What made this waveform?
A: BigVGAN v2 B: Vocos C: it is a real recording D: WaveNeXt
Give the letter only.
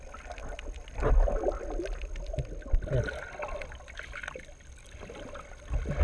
C